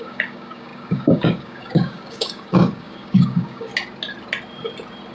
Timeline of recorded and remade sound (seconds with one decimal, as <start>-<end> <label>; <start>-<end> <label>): 0.0-3.7 remade; 3.7-5.1 recorded

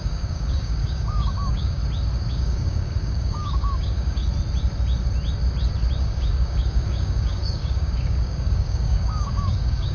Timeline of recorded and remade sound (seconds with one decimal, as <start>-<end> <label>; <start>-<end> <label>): 0.0-1.8 remade; 1.8-2.3 recorded; 2.3-4.2 remade; 4.2-6.0 recorded; 6.0-9.9 remade

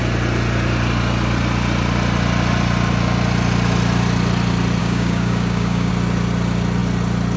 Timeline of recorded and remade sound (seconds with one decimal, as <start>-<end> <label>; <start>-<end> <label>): 0.0-4.8 recorded; 4.8-5.9 remade; 5.9-7.4 recorded